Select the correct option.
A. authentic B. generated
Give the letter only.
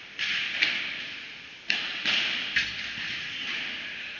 A